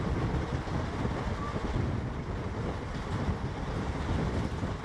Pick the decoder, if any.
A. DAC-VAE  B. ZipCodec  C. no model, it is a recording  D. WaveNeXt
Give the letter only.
C